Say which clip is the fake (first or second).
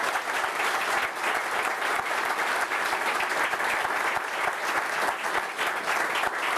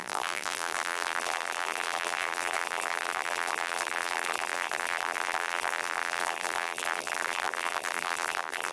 second